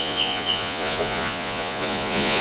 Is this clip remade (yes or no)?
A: yes